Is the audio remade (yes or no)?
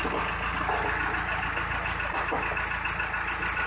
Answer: no